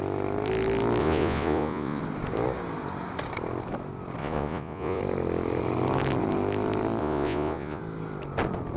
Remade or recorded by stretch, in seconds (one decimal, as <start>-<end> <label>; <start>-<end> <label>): 0.0-1.0 recorded; 1.0-2.0 remade; 2.0-4.2 recorded; 4.2-5.0 remade; 5.0-7.0 recorded; 7.0-7.8 remade; 7.8-8.8 recorded